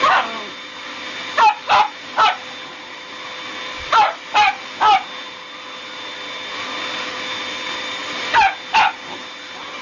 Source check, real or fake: real